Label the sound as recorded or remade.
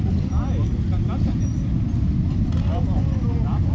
recorded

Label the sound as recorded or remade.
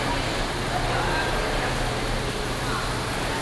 recorded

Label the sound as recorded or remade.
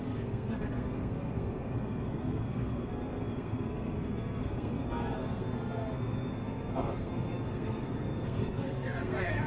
remade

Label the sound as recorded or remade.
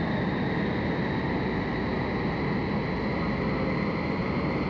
recorded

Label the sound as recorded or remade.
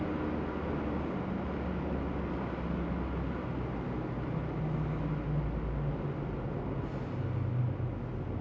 recorded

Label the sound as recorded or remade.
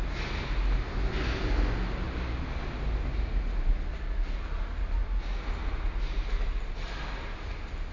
recorded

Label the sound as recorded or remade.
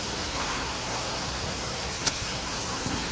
remade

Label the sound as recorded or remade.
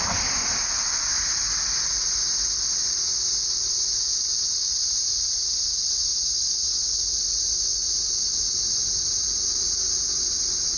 recorded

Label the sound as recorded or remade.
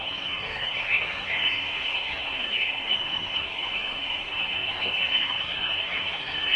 remade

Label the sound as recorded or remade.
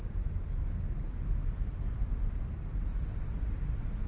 recorded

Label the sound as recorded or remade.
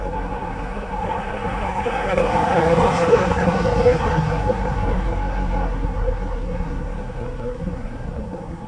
remade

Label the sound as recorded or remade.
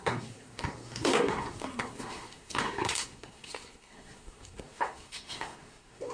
remade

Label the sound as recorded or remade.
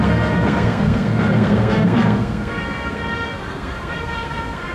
remade